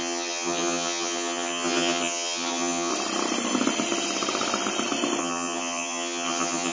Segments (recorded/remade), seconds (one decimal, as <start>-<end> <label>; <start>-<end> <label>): 0.0-2.9 remade; 2.9-5.2 recorded; 5.2-6.7 remade